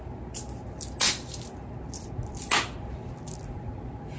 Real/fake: real